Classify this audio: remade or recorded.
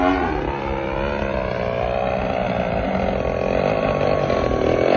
recorded